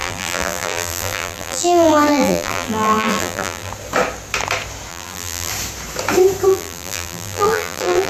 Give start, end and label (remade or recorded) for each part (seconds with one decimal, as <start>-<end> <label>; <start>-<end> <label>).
0.0-3.7 remade; 3.7-4.9 recorded; 4.9-5.5 remade; 5.5-6.5 recorded; 6.5-8.1 remade